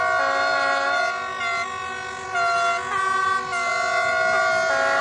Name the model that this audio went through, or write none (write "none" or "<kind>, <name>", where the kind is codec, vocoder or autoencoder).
none